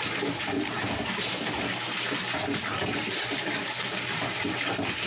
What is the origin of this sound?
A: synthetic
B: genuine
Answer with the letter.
B